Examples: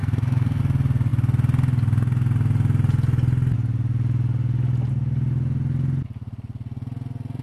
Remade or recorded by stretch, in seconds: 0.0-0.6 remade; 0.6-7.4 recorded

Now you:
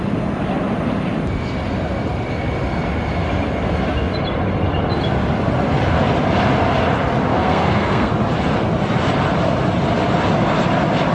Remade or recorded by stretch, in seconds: 0.0-7.3 recorded; 7.3-8.1 remade; 8.1-11.1 recorded